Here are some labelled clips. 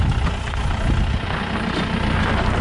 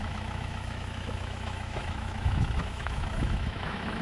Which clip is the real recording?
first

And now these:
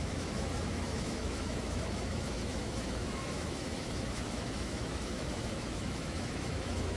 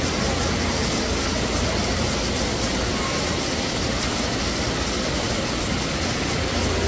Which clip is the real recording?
second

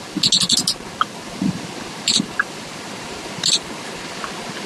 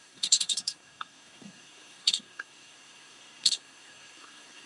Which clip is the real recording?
first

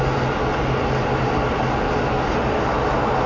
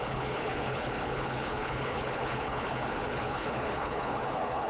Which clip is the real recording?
first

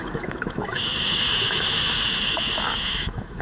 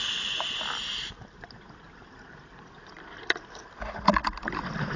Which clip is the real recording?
second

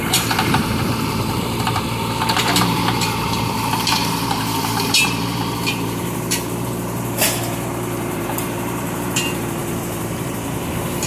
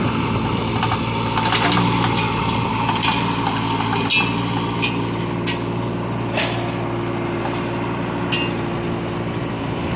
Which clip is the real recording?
second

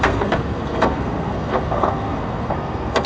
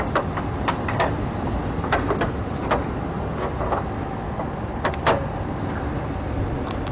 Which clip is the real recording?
second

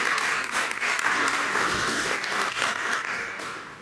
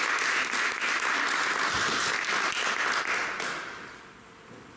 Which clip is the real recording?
second